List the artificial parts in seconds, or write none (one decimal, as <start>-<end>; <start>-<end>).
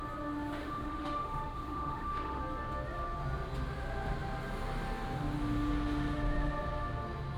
0.6-2.4